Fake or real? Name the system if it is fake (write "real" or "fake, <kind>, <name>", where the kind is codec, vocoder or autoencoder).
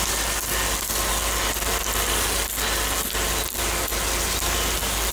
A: real